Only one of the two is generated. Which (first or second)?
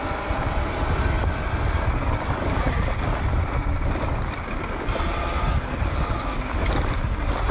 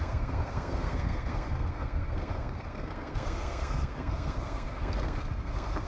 second